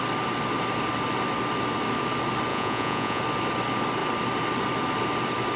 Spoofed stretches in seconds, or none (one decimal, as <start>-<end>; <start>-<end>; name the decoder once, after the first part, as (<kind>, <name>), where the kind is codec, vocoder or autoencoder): 2.5-3.2 (vocoder, Vocos)